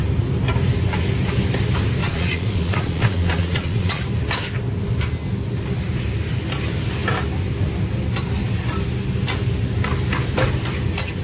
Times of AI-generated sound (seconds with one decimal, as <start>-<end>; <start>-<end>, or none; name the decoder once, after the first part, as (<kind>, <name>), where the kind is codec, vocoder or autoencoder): 2.0-4.0 (vocoder, Vocos)